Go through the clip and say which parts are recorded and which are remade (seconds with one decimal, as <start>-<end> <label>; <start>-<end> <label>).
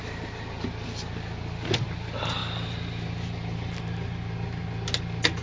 0.0-5.4 recorded